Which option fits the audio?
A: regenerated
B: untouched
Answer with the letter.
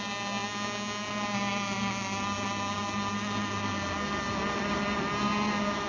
B